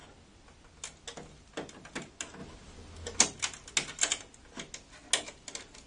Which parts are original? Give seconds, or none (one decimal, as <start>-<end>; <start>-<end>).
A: 0.0-5.9